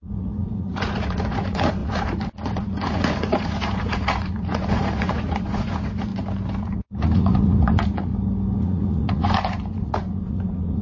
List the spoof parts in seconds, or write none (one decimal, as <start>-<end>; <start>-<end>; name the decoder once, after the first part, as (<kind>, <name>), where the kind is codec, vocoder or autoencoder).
0.0-6.1 (vocoder, Vocos); 6.6-8.1; 8.6-10.8